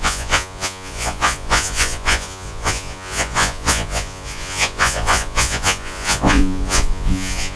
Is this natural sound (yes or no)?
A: no